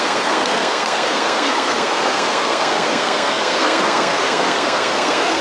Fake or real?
fake